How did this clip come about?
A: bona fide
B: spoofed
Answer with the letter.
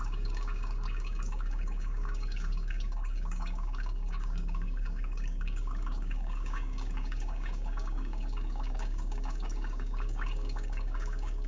B